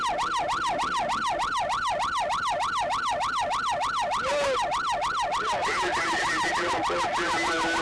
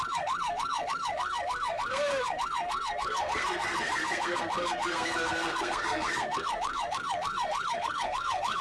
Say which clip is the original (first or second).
first